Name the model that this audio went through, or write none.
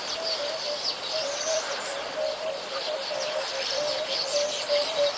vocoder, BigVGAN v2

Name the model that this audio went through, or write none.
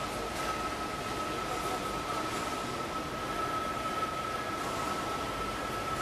none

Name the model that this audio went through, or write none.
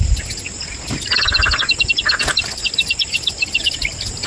none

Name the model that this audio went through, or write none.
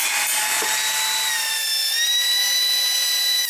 none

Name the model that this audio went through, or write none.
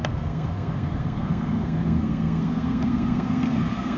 codec, SNAC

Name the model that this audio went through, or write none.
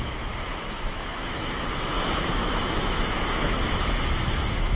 autoencoder, DAC-VAE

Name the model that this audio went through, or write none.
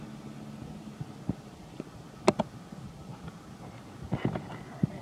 none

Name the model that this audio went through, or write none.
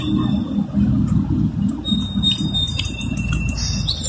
none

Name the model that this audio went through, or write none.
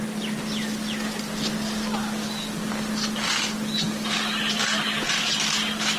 none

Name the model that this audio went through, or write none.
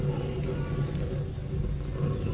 none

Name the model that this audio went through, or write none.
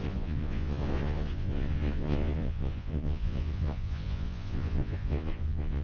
vocoder, Vocos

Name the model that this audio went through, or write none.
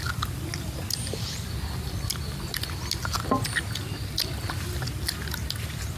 none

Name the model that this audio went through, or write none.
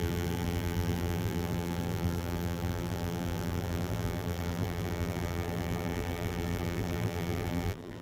vocoder, BigVGAN v2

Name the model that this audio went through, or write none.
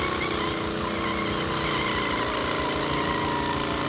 none